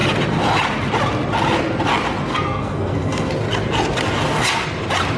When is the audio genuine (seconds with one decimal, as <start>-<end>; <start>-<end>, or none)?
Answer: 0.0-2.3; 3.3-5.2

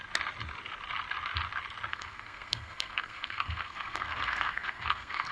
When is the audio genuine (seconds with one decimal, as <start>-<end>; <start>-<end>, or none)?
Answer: 0.0-1.9

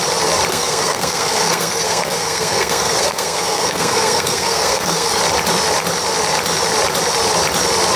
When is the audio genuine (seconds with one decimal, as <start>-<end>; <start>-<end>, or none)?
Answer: 0.0-0.5; 5.2-8.0